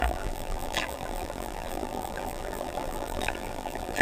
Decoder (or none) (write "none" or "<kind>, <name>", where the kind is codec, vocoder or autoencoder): vocoder, BigVGAN v2